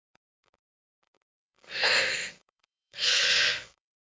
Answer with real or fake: fake